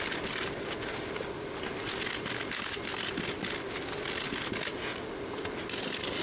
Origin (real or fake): real